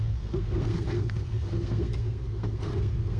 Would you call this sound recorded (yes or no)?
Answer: no